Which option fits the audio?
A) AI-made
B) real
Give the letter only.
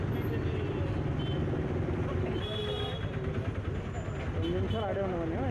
B